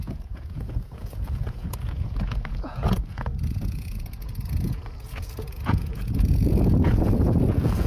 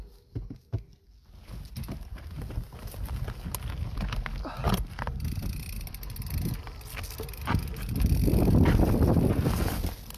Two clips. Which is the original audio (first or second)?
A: second